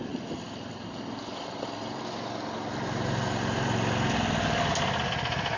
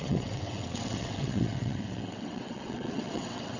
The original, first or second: first